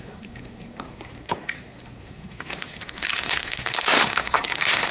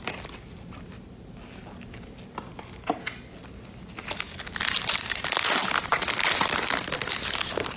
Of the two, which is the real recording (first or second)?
second